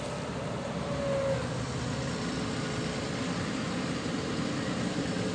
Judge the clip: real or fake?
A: real